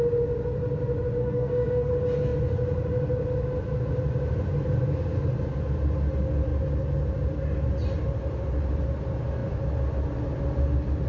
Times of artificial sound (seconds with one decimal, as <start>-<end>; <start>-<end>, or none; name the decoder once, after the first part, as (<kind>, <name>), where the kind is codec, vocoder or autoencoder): 1.2-1.9 (codec, SNAC)